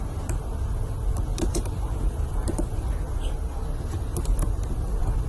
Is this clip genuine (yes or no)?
no